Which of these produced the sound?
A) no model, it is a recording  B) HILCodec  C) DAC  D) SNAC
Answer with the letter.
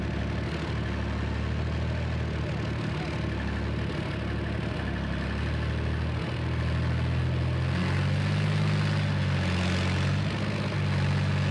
A